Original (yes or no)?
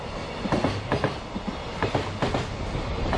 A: yes